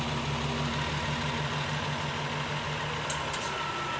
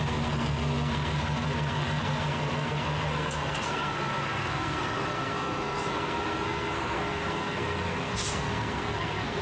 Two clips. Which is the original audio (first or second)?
first